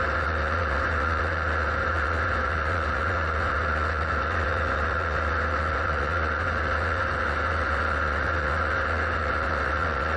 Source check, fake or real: fake